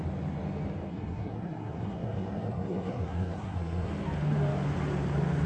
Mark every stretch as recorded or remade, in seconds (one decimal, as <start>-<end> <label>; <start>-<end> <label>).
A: 0.0-0.9 recorded; 0.9-3.9 remade; 3.9-5.5 recorded